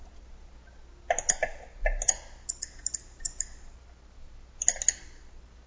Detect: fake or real real